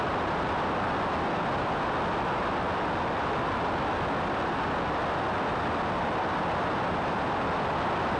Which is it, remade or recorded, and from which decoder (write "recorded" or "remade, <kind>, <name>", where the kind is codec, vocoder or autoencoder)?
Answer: recorded